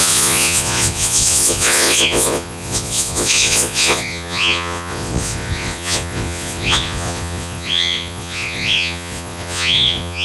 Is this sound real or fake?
fake